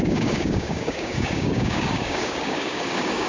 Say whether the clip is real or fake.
fake